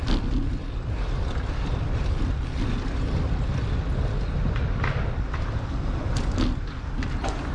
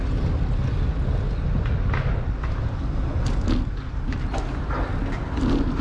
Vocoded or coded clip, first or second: first